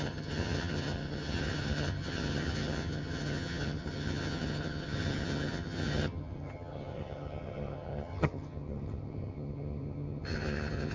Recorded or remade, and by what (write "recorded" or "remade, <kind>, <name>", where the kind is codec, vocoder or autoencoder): remade, vocoder, HiFi-GAN